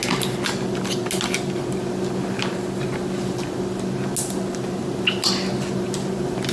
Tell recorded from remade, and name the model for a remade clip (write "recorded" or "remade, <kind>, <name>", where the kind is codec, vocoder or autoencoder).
recorded